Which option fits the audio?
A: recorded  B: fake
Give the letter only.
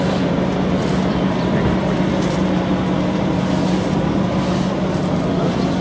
B